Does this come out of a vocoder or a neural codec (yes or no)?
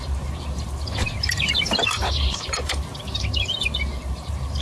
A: yes